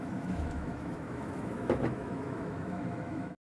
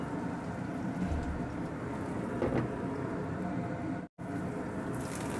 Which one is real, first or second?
second